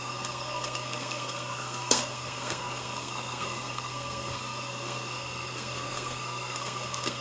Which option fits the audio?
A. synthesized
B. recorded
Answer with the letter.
A